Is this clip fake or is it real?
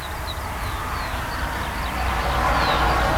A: real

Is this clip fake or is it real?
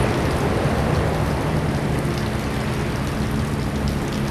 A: real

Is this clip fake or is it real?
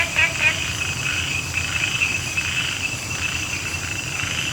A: real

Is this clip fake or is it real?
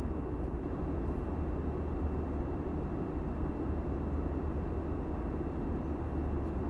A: real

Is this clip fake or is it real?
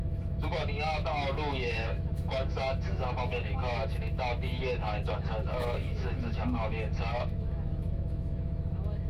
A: fake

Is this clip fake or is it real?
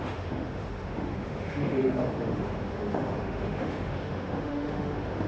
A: fake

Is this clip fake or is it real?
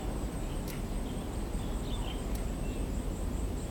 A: real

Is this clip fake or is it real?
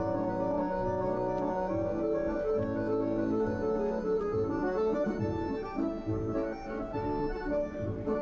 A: real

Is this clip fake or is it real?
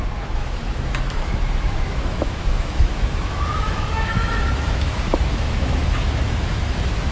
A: fake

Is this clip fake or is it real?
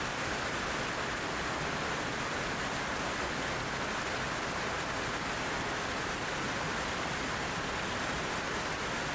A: real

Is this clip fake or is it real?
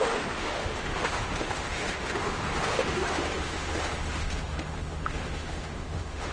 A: fake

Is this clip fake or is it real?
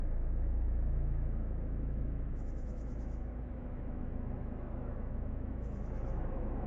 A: fake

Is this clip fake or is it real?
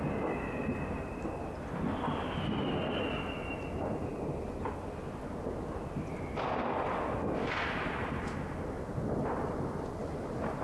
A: real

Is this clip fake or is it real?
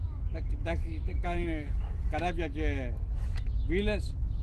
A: fake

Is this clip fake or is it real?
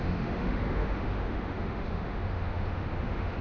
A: fake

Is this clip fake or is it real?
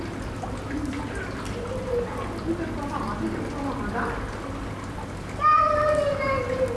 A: real